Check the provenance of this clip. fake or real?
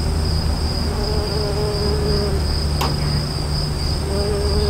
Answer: real